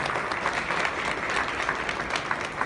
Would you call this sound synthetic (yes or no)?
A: no